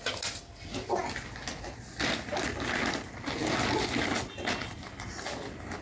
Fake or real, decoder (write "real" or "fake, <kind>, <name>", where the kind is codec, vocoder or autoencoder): real